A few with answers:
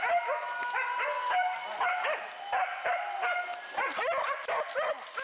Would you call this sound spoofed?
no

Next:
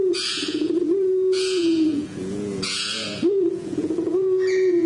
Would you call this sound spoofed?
yes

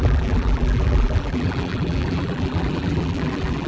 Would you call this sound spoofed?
yes